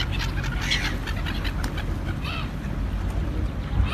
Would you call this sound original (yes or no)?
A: yes